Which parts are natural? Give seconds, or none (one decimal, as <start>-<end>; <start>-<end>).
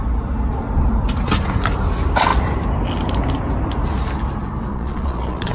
0.0-4.7